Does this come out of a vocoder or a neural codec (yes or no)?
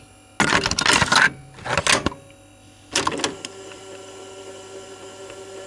no